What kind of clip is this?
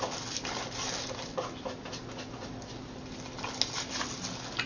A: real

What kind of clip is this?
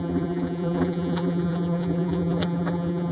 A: fake